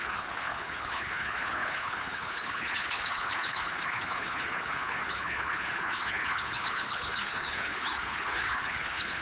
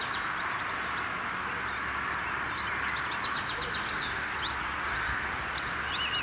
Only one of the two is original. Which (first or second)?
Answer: second